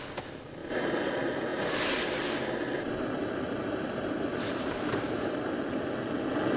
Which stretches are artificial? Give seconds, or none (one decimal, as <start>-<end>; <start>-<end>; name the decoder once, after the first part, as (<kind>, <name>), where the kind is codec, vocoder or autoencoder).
0.6-1.1 (vocoder, BigVGAN v2); 1.5-5.5